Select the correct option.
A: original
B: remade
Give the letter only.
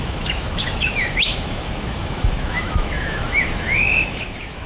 B